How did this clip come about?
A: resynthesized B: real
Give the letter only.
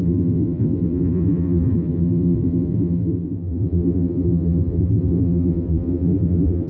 A